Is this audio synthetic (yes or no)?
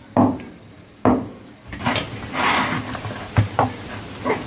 no